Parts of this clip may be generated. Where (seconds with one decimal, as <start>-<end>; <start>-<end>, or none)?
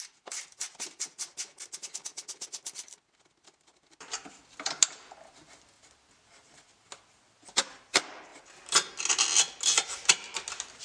none